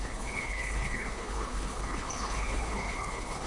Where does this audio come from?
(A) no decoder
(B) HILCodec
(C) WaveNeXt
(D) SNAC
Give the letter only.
B